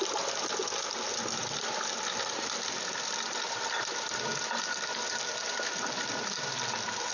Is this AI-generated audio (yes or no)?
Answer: no